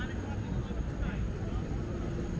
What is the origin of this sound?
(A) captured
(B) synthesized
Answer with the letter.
A